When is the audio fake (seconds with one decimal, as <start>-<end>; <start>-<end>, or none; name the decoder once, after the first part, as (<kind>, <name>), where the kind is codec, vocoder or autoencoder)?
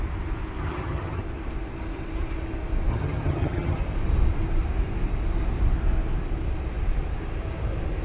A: 0.6-1.2 (vocoder, HiFi-GAN); 2.9-3.8